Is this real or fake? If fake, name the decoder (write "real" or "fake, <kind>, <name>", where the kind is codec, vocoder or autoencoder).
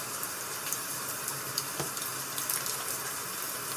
real